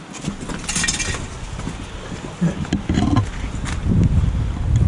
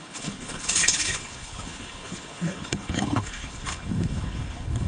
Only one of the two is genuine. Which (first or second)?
first